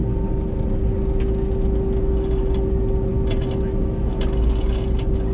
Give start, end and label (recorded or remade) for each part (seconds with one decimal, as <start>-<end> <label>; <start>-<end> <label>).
0.0-5.3 recorded